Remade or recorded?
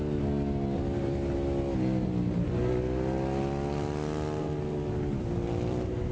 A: recorded